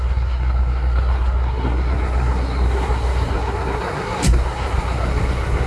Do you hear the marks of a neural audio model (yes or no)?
yes